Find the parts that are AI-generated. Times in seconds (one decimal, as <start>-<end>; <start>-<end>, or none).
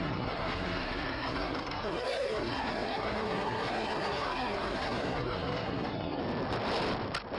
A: 0.0-6.2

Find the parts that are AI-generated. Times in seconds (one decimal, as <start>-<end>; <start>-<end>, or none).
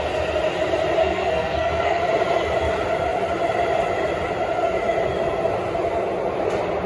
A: 1.0-2.0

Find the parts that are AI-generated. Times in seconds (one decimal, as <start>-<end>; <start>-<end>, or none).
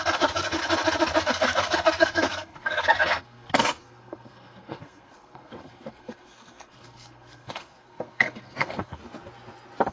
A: 0.0-0.6; 1.2-9.0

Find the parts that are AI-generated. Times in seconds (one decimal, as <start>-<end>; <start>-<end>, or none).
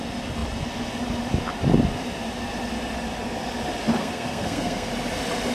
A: 4.0-4.9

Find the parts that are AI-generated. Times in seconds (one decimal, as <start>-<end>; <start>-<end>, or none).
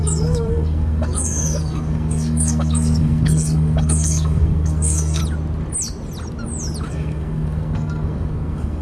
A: 0.0-5.2; 6.9-8.8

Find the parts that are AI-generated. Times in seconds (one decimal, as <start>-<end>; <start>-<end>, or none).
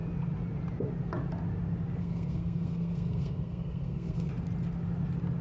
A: 2.0-4.3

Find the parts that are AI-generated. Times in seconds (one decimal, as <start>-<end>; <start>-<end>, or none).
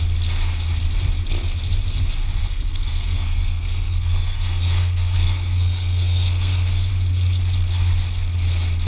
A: 2.4-6.9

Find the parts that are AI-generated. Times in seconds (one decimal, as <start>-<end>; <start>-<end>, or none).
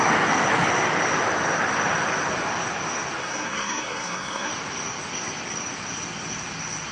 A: 3.2-4.5